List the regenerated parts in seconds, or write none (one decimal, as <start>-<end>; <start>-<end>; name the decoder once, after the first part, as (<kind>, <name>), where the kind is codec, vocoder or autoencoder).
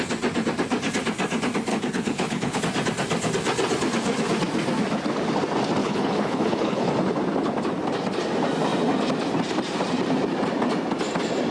1.7-2.6 (codec, HILCodec); 5.8-6.9